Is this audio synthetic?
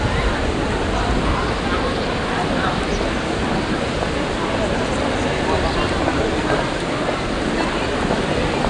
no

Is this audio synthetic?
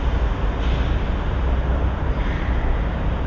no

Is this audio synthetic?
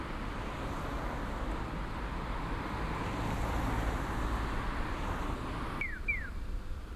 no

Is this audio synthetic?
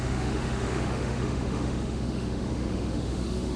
yes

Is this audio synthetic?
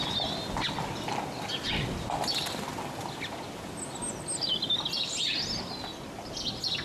no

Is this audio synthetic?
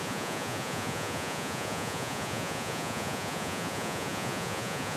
yes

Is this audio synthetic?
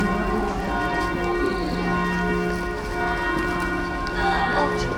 no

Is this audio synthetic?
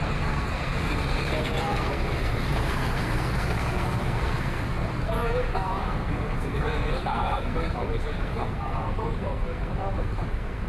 yes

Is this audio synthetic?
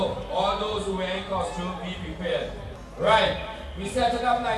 no